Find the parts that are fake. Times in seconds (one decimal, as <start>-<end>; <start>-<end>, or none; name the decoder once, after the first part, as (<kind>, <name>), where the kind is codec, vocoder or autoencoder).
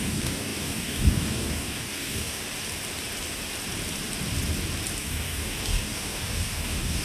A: 0.0-2.4 (codec, DAC); 5.0-7.0